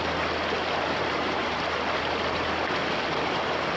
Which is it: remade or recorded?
remade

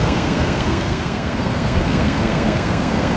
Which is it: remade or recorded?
remade